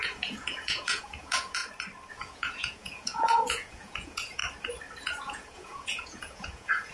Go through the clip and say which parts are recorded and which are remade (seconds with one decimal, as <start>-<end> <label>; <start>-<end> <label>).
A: 0.0-1.6 remade; 1.6-2.1 recorded; 2.1-4.4 remade; 4.4-5.0 recorded; 5.0-6.9 remade